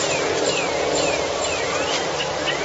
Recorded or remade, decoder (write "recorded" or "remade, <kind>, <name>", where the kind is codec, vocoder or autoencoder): recorded